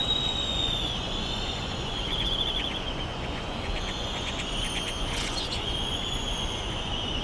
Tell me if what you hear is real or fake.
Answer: fake